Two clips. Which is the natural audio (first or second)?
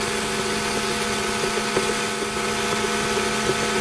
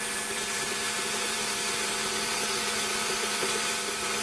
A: first